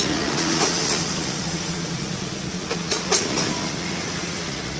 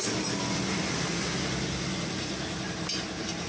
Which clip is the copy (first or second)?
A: first